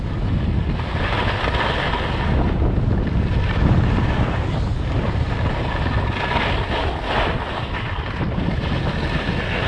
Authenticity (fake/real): real